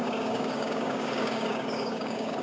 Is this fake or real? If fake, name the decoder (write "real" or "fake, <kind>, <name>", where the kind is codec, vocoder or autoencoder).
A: fake, codec, DAC